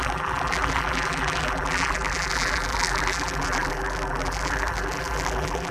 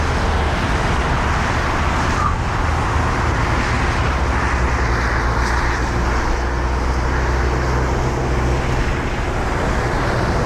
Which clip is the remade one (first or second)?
first